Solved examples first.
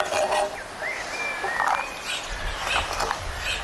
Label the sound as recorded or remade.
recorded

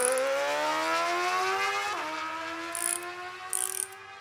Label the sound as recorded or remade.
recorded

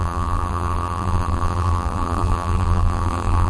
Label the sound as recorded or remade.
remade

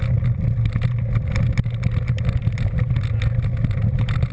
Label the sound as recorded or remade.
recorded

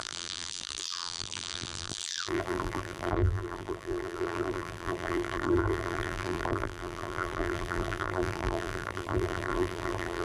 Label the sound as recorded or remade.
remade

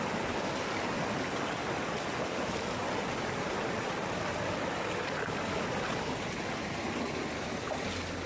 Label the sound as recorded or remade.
recorded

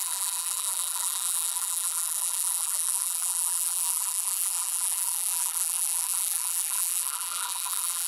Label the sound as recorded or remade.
remade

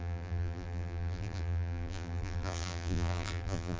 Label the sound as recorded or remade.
remade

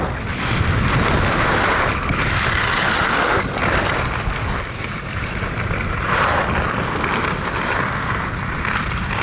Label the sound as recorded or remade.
recorded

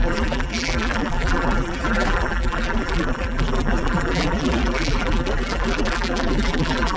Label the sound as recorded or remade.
remade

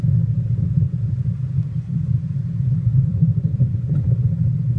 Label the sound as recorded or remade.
remade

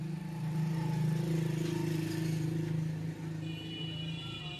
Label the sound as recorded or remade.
recorded